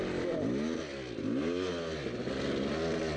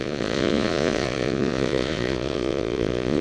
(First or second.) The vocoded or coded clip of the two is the second